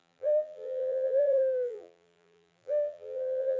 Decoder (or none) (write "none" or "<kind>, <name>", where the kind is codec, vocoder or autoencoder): vocoder, BigVGAN v2